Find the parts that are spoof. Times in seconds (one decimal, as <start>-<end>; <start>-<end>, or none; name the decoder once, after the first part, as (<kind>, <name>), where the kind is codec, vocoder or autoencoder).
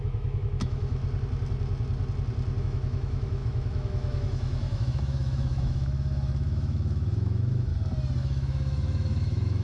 0.0-1.0 (autoencoder, DAC-VAE); 2.6-7.7; 8.2-9.6